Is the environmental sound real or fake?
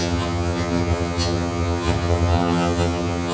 fake